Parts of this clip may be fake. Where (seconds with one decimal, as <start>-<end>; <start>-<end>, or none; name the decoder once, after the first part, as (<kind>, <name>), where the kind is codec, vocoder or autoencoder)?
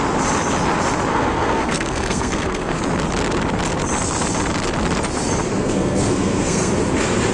1.1-2.8 (codec, SNAC); 5.5-6.7